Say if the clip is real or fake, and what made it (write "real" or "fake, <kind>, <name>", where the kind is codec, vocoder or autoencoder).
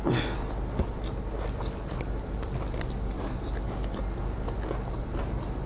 real